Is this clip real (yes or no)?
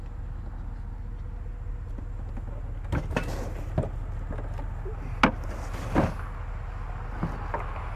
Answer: yes